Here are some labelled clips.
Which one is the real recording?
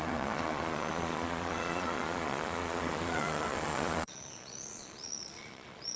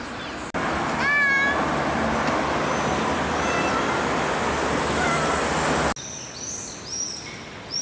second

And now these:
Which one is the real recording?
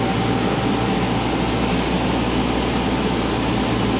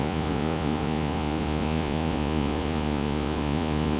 first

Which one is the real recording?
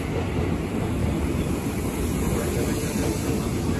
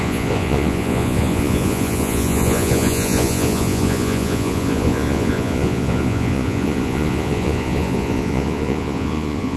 first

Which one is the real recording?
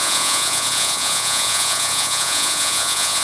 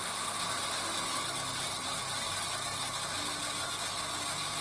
second